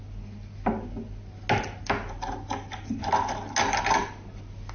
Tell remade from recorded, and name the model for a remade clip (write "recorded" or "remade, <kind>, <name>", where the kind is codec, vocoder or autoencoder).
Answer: recorded